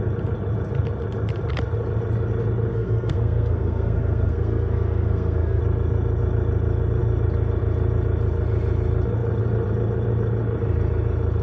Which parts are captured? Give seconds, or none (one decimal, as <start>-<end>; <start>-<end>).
0.0-2.7; 5.6-11.4